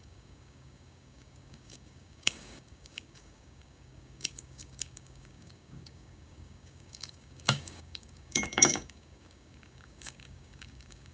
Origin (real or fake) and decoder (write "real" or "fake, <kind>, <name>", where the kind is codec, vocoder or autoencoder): fake, codec, DAC